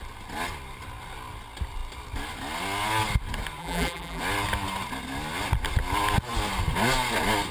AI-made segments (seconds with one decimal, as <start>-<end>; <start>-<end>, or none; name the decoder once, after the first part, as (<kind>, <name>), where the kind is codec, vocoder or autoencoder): 3.6-4.2 (vocoder, BigVGAN v2)